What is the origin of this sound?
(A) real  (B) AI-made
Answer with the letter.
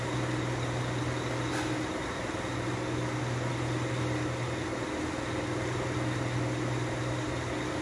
A